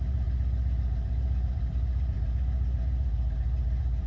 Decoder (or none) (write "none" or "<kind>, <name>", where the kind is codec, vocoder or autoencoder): vocoder, BigVGAN v2